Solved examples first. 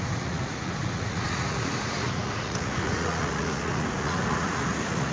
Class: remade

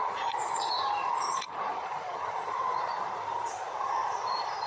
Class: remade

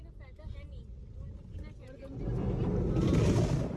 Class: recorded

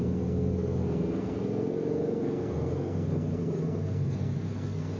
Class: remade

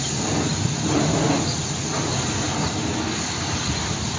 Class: recorded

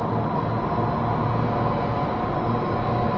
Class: recorded